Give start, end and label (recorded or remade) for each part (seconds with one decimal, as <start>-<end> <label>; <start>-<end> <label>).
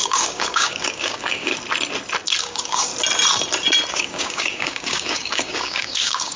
0.0-1.5 remade; 1.5-2.4 recorded; 2.4-2.9 remade; 2.9-3.9 recorded; 3.9-6.4 remade